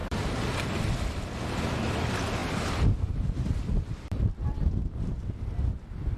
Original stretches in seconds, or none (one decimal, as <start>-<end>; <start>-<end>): 0.7-2.4; 4.6-6.2